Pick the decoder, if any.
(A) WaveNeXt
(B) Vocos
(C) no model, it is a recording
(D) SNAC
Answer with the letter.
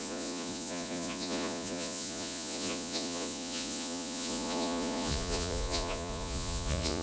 B